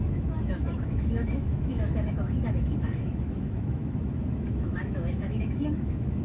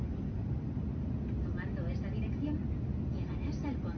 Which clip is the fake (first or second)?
first